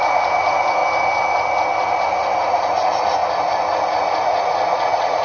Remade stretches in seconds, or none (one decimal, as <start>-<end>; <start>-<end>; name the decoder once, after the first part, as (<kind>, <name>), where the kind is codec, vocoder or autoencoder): 0.0-0.8 (vocoder, Vocos); 2.4-3.2; 3.9-5.2